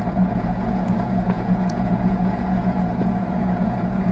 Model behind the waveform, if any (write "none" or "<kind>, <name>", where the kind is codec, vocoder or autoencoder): vocoder, Vocos